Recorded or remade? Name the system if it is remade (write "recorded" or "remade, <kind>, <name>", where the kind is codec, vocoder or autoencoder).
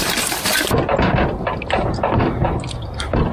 remade, vocoder, BigVGAN v2